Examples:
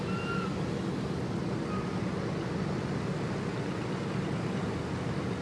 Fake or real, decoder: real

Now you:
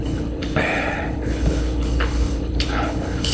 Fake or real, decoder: fake, codec, HILCodec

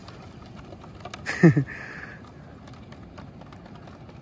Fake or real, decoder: real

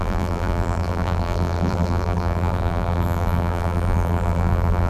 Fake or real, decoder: fake, vocoder, BigVGAN v2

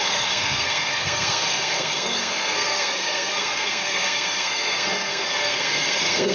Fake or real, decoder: fake, codec, SNAC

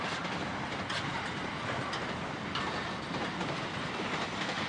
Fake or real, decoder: real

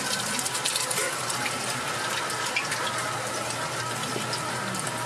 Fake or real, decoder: real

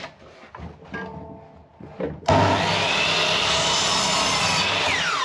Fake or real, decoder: real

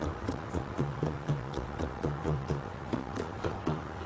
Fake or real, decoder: fake, vocoder, WaveNeXt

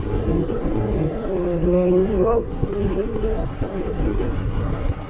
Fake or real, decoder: fake, codec, SNAC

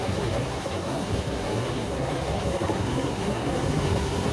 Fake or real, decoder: fake, codec, SNAC